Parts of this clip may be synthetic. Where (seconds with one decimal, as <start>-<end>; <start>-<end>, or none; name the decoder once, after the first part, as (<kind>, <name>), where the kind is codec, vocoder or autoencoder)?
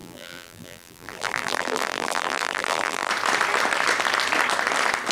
0.0-3.1 (vocoder, BigVGAN v2)